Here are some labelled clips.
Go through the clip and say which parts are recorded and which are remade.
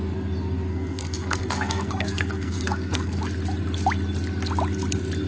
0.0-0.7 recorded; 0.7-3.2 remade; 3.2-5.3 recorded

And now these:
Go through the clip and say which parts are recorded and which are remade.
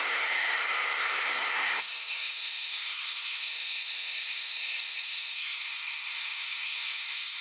0.0-7.4 remade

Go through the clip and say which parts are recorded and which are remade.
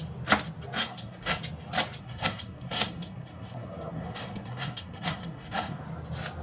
0.0-0.8 recorded; 0.8-1.4 remade; 1.4-2.0 recorded; 2.0-5.8 remade; 5.8-6.4 recorded